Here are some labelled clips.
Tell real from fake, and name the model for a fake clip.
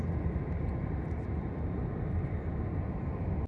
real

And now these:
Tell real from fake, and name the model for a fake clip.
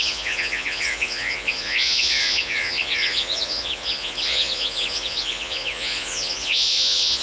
fake, vocoder, Vocos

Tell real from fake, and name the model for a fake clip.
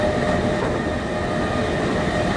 real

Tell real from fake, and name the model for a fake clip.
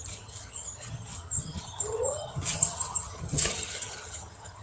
fake, vocoder, HiFi-GAN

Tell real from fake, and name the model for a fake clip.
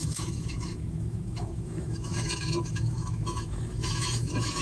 fake, autoencoder, DAC-VAE